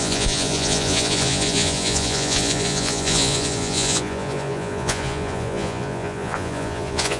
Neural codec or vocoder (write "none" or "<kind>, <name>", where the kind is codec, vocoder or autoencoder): vocoder, Vocos